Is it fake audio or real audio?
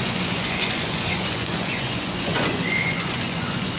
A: fake